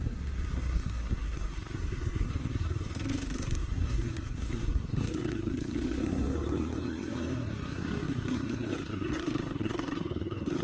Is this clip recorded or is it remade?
remade